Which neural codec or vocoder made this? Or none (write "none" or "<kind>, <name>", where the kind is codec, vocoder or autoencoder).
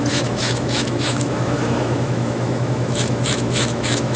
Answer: autoencoder, DAC-VAE